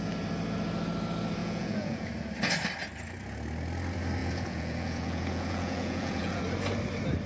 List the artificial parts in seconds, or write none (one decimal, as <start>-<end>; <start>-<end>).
1.4-2.1; 4.2-6.4